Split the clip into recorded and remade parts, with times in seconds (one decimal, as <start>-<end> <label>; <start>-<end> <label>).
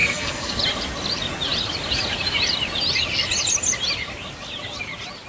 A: 0.0-0.6 remade; 0.6-5.3 recorded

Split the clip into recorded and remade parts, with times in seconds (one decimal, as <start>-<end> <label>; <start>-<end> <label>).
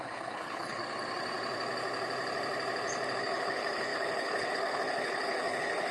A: 0.0-0.8 remade; 0.8-3.2 recorded; 3.2-5.9 remade